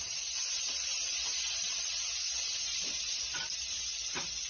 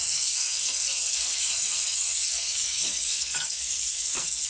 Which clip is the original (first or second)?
first